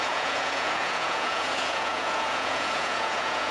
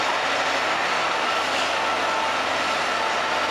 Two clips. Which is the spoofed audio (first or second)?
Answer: first